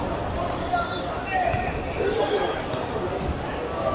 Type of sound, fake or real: real